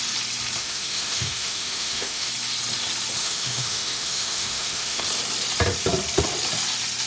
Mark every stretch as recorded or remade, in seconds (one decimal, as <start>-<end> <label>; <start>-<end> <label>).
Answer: 0.0-0.6 recorded; 0.6-2.3 remade; 2.3-3.2 recorded; 3.2-5.0 remade; 5.0-7.1 recorded